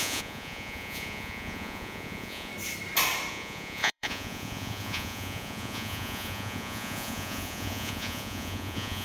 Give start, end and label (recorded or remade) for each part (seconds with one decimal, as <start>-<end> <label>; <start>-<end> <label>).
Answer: 0.0-2.5 remade; 2.5-3.3 recorded; 3.3-9.0 remade